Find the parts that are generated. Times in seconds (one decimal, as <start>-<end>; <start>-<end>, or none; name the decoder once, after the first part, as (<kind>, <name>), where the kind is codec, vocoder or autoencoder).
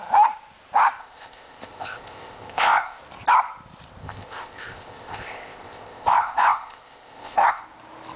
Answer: 1.0-3.0 (codec, ZipCodec); 4.0-7.6